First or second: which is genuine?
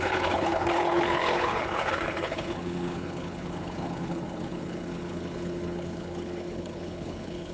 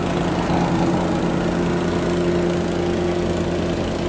second